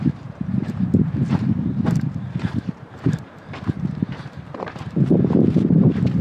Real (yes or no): no